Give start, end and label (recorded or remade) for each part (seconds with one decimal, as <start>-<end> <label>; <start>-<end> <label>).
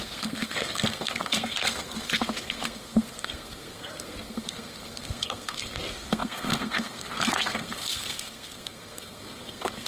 0.0-9.9 remade